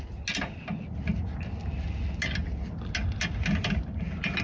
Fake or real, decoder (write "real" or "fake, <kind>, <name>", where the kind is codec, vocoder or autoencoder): real